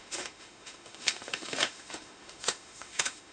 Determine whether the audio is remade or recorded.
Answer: remade